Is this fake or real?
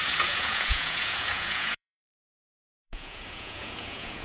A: fake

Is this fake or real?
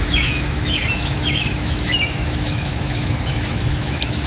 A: fake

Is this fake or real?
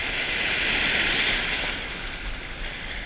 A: real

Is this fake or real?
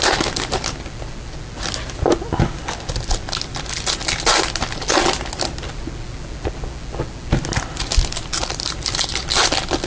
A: real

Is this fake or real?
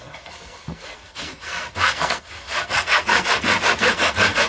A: fake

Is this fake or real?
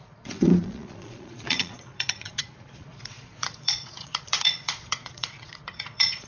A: fake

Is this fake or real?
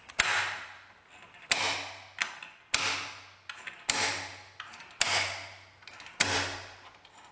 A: real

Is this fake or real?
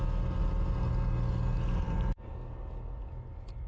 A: real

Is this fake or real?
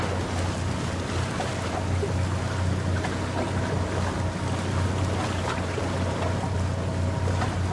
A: real